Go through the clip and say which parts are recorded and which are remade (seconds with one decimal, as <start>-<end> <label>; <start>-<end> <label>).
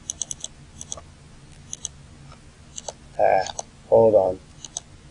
0.0-5.1 recorded